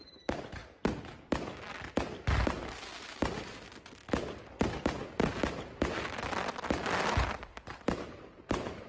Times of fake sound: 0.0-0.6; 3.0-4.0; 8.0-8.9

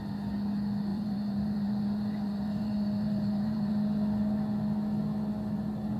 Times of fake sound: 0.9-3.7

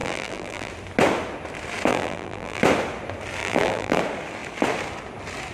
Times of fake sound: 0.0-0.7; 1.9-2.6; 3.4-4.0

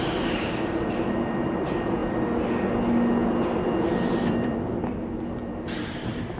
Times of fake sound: 0.0-2.0; 3.4-6.4